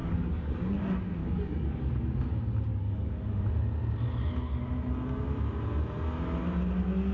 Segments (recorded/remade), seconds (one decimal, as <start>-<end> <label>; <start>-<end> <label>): 0.0-0.5 remade; 0.5-1.2 recorded; 1.2-2.2 remade; 2.2-2.7 recorded; 2.7-3.4 remade; 3.4-7.1 recorded